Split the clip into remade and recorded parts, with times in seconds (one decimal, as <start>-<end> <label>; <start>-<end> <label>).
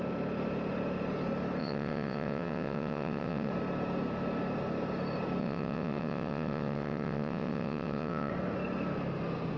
0.0-1.6 recorded; 1.6-3.5 remade; 3.5-5.4 recorded; 5.4-8.3 remade; 8.3-9.6 recorded